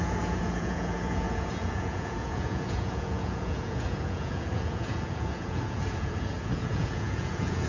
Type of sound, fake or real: fake